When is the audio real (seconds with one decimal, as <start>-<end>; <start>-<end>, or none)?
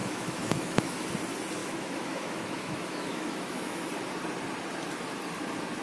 1.1-1.6; 3.9-5.8